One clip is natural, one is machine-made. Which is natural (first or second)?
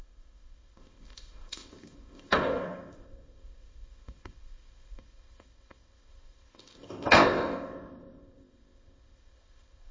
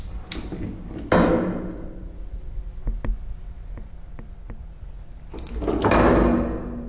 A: second